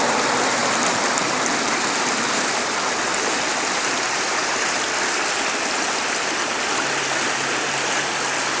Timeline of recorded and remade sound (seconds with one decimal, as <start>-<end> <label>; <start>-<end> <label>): 0.0-0.6 recorded; 0.6-3.5 remade; 3.5-8.6 recorded